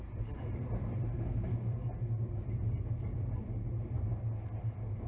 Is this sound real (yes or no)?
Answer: no